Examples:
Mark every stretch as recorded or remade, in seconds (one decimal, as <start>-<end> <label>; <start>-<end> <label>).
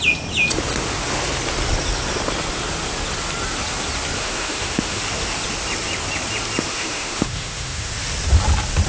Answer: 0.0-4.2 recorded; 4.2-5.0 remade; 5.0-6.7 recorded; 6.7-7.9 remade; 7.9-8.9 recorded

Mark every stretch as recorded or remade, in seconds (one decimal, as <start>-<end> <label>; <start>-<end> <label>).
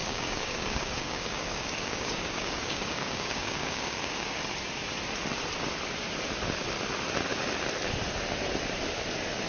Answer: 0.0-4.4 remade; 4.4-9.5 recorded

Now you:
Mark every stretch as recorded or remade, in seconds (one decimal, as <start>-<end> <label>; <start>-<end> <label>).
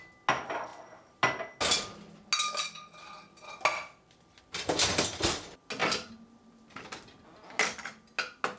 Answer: 0.0-8.6 recorded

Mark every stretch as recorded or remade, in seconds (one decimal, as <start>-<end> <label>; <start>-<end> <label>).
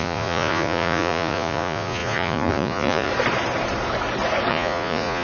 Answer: 0.0-3.1 remade; 3.1-4.5 recorded; 4.5-5.2 remade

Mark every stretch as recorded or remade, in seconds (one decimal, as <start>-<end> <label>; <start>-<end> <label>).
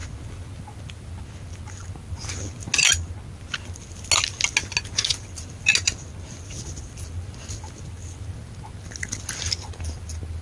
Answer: 0.0-10.4 recorded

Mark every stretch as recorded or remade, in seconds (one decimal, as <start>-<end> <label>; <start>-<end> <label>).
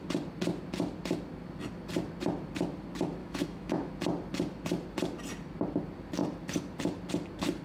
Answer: 0.0-3.2 recorded; 3.2-3.9 remade; 3.9-7.6 recorded